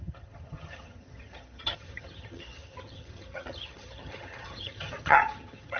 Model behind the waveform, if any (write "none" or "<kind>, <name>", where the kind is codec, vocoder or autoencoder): vocoder, HiFi-GAN